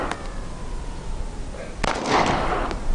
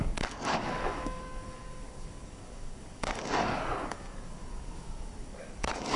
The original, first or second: first